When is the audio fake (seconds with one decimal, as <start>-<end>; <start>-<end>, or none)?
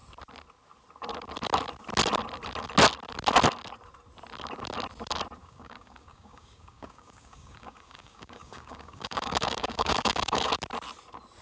5.4-10.5